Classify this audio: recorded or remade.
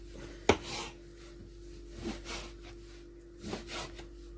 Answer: recorded